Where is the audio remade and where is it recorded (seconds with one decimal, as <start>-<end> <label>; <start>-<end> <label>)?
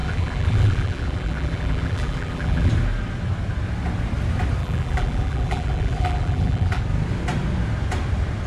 0.0-2.7 remade; 2.7-4.6 recorded; 4.6-6.8 remade; 6.8-8.5 recorded